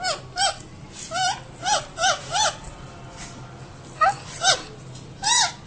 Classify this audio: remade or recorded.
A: recorded